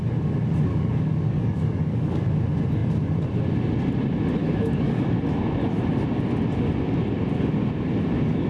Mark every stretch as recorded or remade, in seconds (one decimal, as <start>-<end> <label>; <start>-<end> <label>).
0.0-0.7 recorded; 0.7-2.2 remade; 2.2-4.4 recorded; 4.4-5.1 remade; 5.1-8.5 recorded